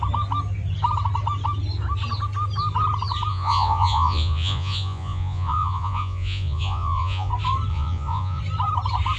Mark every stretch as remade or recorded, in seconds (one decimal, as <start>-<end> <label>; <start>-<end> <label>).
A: 0.0-3.3 recorded; 3.3-7.3 remade; 7.3-7.7 recorded; 7.7-8.4 remade; 8.4-9.2 recorded

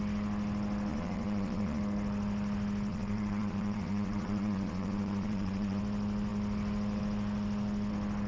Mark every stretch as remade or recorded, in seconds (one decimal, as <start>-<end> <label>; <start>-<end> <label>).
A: 0.0-0.9 recorded; 0.9-1.8 remade; 1.8-2.9 recorded; 2.9-5.8 remade; 5.8-8.3 recorded

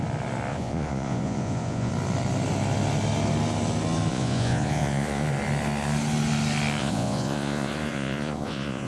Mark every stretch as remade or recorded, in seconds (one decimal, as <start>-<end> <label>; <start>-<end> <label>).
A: 0.0-0.5 recorded; 0.5-1.9 remade; 1.9-4.1 recorded; 4.1-5.3 remade; 5.3-6.8 recorded; 6.8-8.9 remade

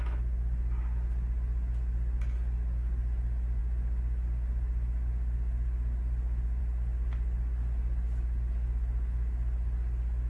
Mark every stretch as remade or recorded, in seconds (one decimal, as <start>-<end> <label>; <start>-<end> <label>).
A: 0.0-10.3 recorded

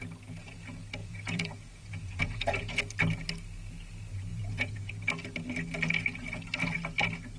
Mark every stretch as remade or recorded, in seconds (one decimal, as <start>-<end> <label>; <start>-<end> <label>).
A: 0.0-1.0 recorded; 1.0-2.8 remade; 2.8-4.3 recorded; 4.3-4.9 remade; 4.9-7.4 recorded

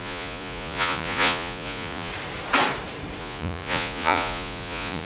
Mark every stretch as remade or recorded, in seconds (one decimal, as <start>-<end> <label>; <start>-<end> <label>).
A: 0.0-2.1 remade; 2.1-3.2 recorded; 3.2-5.0 remade

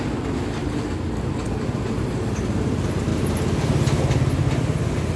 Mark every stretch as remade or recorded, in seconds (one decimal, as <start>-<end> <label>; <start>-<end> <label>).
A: 0.0-5.2 recorded